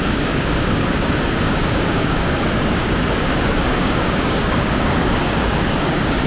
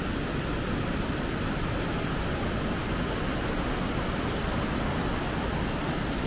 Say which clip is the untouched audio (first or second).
second